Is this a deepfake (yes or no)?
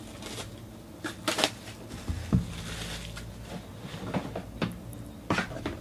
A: no